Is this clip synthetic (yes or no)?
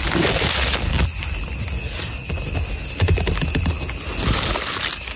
no